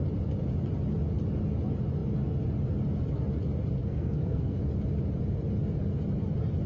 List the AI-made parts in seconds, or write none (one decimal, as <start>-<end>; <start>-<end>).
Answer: 3.8-4.6